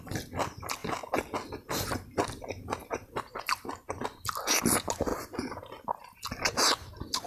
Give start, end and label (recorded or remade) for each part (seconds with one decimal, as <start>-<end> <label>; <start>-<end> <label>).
0.0-2.8 recorded; 2.8-3.4 remade; 3.4-7.3 recorded